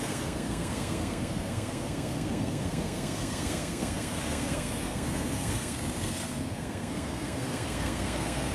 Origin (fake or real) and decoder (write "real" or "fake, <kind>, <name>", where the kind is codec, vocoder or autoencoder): fake, codec, SNAC